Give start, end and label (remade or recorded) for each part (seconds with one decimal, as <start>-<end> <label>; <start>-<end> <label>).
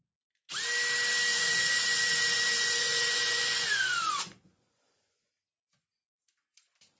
0.0-1.3 recorded; 1.3-5.3 remade; 5.3-7.0 recorded